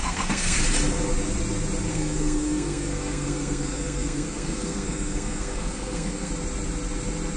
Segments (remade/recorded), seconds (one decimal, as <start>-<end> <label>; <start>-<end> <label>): 0.0-0.6 remade; 0.6-1.9 recorded; 1.9-6.3 remade; 6.3-7.4 recorded